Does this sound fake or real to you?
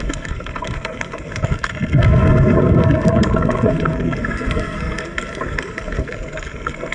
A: fake